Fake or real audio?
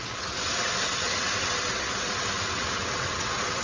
fake